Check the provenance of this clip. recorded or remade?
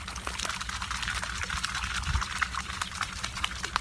recorded